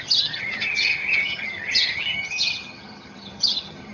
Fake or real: fake